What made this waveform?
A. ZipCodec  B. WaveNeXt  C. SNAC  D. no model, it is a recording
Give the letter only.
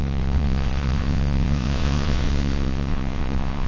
B